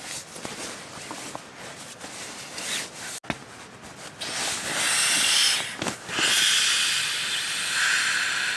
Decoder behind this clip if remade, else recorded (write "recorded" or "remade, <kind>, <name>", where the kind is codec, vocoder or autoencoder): recorded